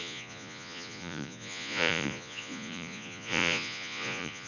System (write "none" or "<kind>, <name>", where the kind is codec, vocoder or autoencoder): vocoder, Vocos